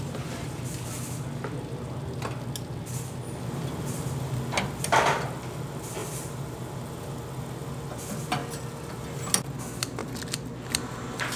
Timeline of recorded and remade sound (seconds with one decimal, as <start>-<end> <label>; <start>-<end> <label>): 0.0-6.0 recorded; 6.0-6.6 remade; 6.6-11.4 recorded